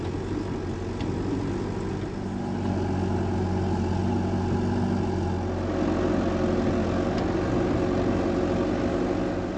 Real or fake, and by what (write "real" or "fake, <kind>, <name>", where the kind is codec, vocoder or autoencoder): real